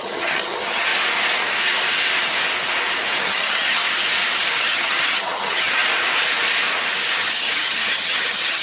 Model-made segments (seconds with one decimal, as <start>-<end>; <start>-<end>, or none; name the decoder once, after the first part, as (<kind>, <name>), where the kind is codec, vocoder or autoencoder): 0.0-0.9 (vocoder, HiFi-GAN); 3.2-3.8; 4.6-5.8; 7.1-8.6